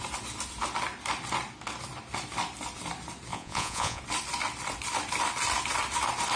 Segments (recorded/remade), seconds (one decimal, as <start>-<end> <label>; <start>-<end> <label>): 0.0-3.3 recorded; 3.3-4.0 remade; 4.0-6.4 recorded